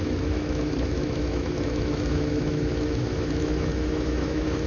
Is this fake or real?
fake